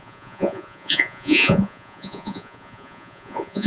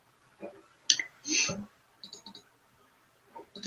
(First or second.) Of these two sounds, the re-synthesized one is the first